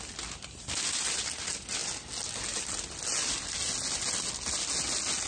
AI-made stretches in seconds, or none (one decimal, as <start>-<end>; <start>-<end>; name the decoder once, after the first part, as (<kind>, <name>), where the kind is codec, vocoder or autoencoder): none